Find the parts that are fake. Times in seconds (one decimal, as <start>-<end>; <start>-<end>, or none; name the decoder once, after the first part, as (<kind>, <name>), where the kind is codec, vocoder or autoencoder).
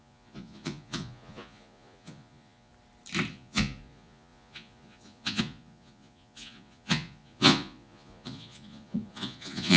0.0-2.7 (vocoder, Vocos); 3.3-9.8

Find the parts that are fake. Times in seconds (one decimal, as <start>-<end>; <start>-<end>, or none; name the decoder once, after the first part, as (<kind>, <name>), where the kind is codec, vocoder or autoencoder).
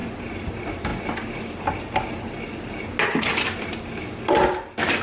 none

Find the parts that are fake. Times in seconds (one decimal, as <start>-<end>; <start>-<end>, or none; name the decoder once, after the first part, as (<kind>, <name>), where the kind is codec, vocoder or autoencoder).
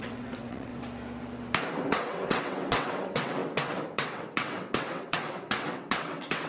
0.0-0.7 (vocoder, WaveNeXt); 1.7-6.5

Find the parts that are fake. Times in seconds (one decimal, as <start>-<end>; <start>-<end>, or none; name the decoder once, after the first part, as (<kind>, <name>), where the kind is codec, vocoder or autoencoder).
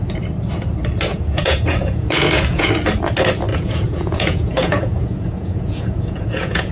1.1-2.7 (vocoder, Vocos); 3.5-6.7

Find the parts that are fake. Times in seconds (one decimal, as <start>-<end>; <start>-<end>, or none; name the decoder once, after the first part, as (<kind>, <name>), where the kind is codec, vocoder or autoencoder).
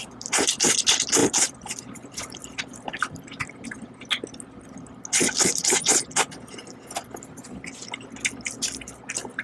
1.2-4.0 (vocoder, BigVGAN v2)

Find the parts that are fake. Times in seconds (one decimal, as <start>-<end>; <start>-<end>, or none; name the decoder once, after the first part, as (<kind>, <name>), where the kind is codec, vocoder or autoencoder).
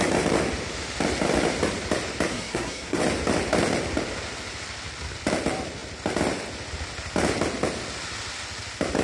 2.3-3.0 (codec, SNAC)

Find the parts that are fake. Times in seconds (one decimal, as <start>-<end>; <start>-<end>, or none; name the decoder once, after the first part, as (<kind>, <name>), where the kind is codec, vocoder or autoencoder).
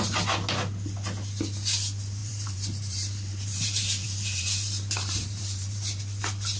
2.2-6.0 (vocoder, BigVGAN v2)